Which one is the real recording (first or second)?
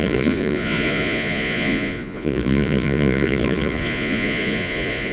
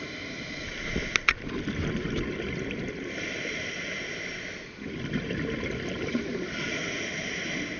second